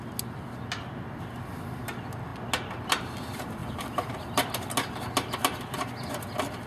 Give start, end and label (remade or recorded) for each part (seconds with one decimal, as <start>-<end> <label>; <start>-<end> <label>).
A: 0.0-6.7 recorded